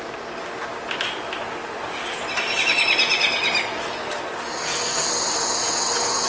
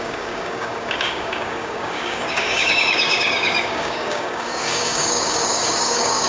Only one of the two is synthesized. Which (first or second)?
second